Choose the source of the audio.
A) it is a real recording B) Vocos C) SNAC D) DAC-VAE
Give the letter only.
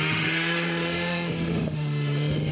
D